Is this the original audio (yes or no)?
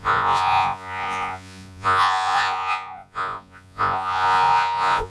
no